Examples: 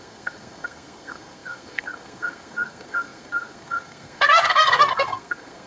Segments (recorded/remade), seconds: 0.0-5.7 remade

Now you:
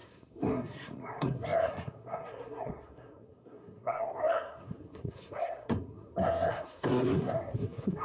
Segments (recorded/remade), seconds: 0.0-8.0 remade

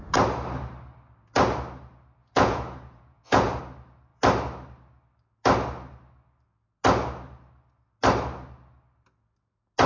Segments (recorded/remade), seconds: 0.0-2.2 recorded; 2.2-3.6 remade; 3.6-9.9 recorded

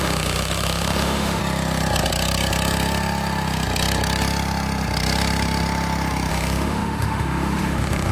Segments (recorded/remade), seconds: 0.0-1.4 remade; 1.4-6.3 recorded; 6.3-8.1 remade

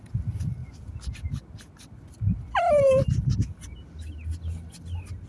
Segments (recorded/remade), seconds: 0.0-0.6 recorded; 0.6-3.8 remade; 3.8-5.3 recorded

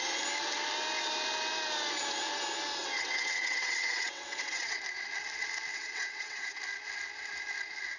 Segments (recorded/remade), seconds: 0.0-2.8 recorded; 2.8-4.8 remade; 4.8-5.7 recorded; 5.7-6.6 remade; 6.6-8.0 recorded

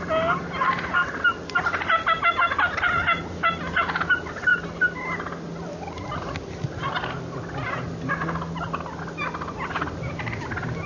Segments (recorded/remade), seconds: 0.0-10.9 recorded

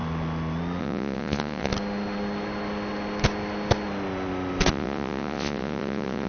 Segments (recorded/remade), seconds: 0.0-0.8 recorded; 0.8-1.7 remade; 1.7-4.7 recorded; 4.7-6.3 remade